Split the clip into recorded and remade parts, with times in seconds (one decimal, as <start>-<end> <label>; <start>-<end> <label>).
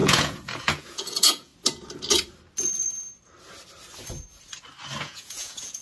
0.0-1.5 remade; 1.5-5.0 recorded; 5.0-5.8 remade